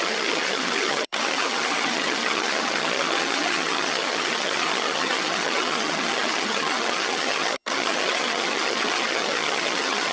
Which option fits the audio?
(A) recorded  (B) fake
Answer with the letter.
B